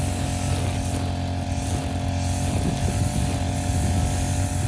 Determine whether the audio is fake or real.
real